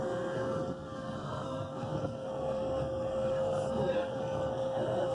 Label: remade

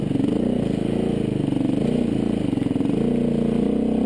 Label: recorded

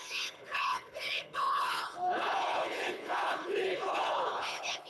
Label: remade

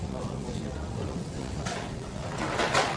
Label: remade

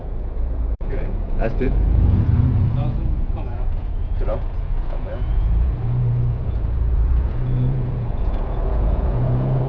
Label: remade